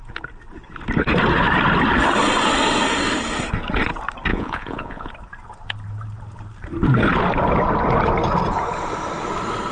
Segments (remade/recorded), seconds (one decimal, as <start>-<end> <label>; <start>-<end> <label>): 0.0-4.3 recorded; 4.3-5.1 remade; 5.1-9.7 recorded